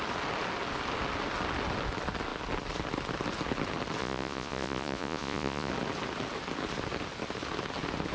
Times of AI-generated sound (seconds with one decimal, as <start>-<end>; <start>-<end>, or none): 4.0-5.7